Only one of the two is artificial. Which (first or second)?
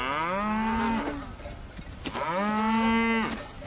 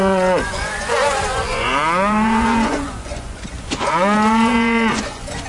second